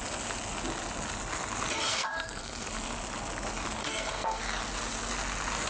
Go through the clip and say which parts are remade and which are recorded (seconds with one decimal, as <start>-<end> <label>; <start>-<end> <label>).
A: 0.0-1.9 recorded; 1.9-2.7 remade; 2.7-3.8 recorded; 3.8-4.4 remade; 4.4-5.7 recorded